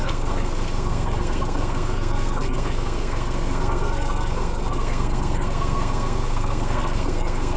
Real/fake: fake